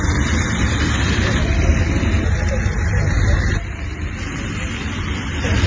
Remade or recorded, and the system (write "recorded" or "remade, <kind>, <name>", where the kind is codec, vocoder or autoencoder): remade, vocoder, BigVGAN v2